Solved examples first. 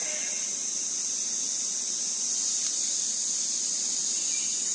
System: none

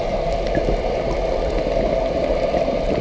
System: vocoder, BigVGAN v2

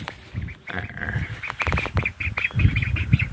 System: none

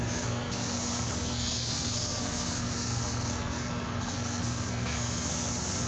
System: codec, SNAC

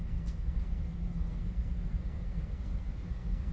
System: codec, SNAC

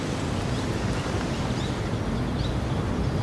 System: none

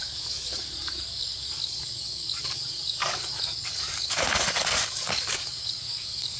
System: codec, DAC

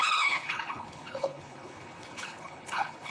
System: codec, HILCodec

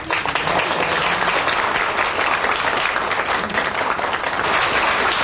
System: none